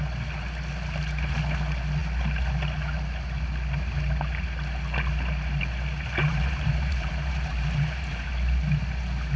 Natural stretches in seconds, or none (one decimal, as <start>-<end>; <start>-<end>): 0.0-6.3; 8.3-9.4